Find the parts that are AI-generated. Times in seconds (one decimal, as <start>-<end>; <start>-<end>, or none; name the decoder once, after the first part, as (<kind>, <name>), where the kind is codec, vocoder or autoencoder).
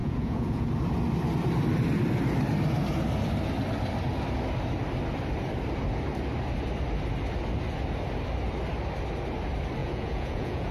0.0-0.7 (vocoder, Vocos); 9.8-10.7